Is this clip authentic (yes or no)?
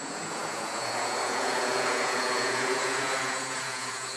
no